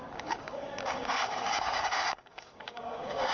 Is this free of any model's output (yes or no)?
no